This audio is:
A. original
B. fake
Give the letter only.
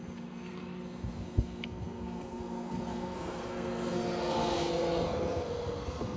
B